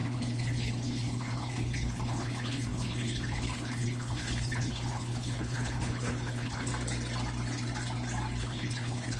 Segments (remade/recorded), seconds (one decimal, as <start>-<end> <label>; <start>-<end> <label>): 0.0-6.7 remade; 6.7-8.4 recorded; 8.4-9.2 remade